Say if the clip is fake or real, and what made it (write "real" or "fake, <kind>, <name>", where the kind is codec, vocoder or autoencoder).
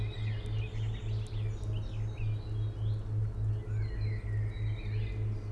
real